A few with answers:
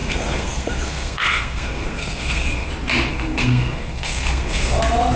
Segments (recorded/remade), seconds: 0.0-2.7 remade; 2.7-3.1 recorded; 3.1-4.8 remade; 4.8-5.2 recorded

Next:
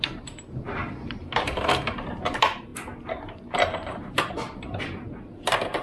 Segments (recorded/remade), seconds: 0.0-2.7 remade; 2.7-3.5 recorded; 3.5-5.8 remade

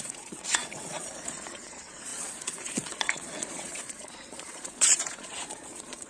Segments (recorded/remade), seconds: 0.0-6.1 remade